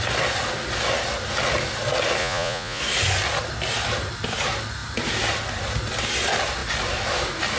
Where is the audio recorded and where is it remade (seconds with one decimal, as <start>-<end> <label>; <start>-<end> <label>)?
0.0-2.2 recorded; 2.2-2.8 remade; 2.8-7.6 recorded